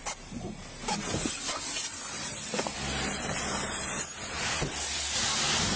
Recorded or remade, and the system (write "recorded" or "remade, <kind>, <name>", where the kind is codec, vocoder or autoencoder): recorded